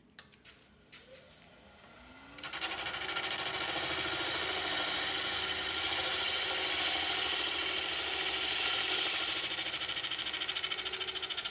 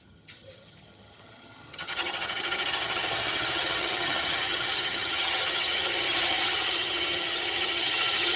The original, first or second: first